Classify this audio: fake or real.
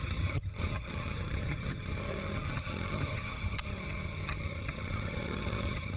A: fake